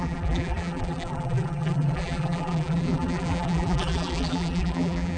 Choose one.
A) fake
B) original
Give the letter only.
A